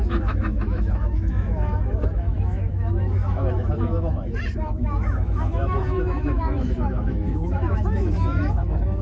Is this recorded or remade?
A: remade